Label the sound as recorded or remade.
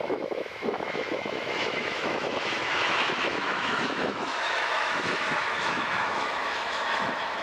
remade